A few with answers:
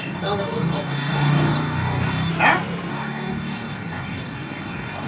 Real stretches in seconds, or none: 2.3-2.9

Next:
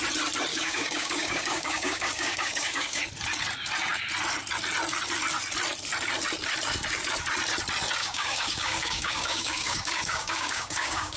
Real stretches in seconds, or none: 0.0-0.5; 3.0-8.0

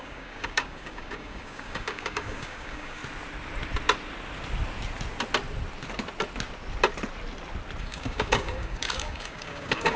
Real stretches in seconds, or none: 3.0-7.8

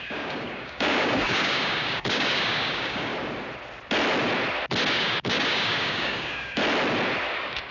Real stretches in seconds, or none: 3.1-4.9; 6.6-7.3

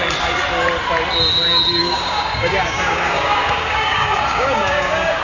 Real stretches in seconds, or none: 0.0-1.8